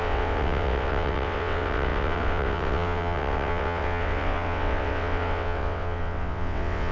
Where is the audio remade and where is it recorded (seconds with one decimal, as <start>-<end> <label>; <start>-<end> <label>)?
0.0-6.9 remade

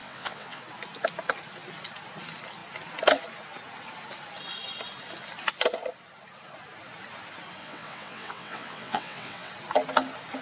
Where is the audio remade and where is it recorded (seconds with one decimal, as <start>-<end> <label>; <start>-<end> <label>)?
0.0-0.6 remade; 0.6-7.6 recorded; 7.6-9.5 remade; 9.5-10.4 recorded